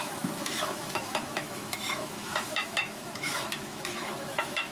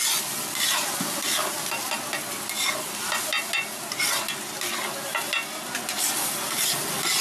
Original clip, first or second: second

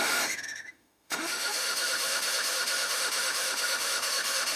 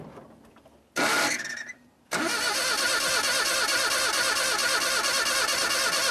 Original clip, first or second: second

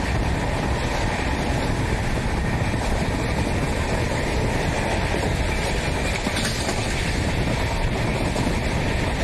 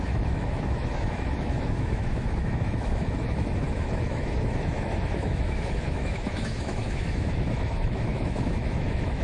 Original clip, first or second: first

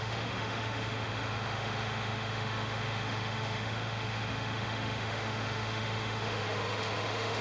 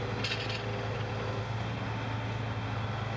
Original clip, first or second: second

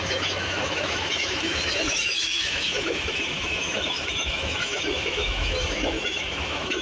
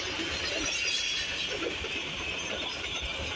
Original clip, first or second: second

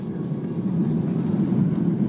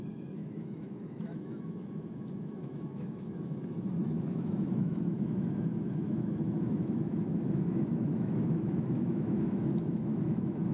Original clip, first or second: first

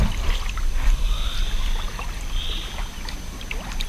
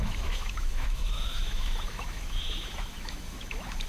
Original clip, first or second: first